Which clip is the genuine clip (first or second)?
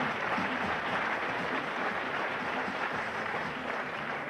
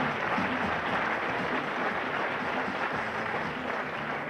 second